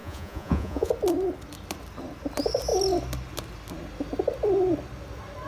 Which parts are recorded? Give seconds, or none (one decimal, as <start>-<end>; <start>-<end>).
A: 0.9-5.5